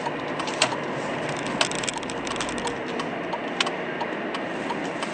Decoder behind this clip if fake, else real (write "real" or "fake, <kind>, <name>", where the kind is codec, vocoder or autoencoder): real